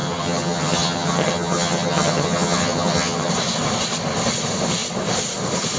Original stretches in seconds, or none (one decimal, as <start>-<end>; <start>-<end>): 3.3-5.8